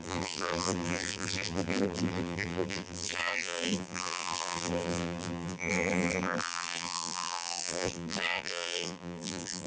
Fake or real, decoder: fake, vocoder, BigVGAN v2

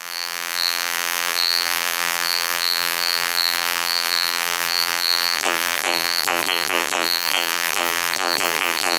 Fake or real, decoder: fake, vocoder, BigVGAN v2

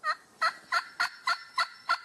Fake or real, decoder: real